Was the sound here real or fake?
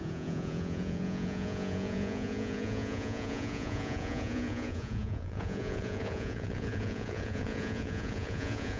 fake